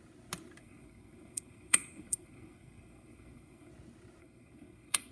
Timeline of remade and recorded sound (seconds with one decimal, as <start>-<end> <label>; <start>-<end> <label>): 0.0-0.6 recorded; 0.6-3.7 remade; 3.7-4.2 recorded; 4.2-5.1 remade